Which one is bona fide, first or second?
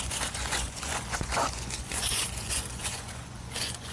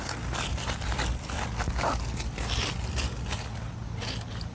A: second